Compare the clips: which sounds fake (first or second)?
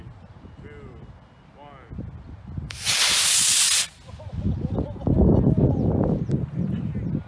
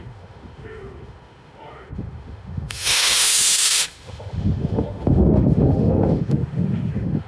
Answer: second